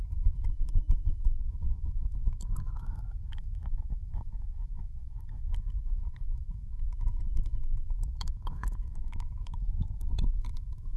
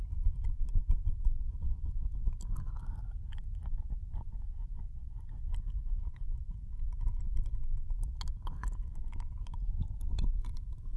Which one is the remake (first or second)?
first